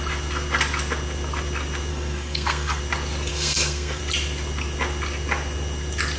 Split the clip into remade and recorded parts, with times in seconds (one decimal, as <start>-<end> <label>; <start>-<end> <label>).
0.0-1.9 recorded; 1.9-2.8 remade; 2.8-3.3 recorded; 3.3-4.0 remade; 4.0-6.2 recorded